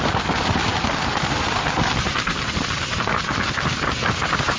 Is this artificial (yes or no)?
no